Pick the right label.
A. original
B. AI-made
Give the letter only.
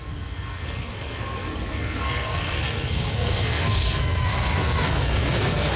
B